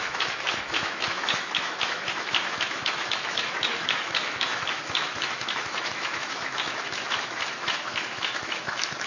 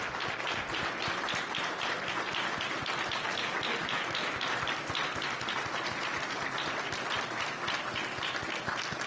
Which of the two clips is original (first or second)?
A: second